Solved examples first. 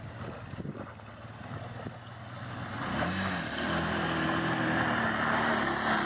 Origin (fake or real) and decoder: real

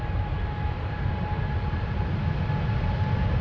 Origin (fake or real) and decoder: real